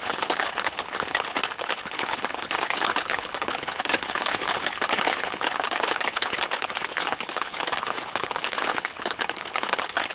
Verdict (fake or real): fake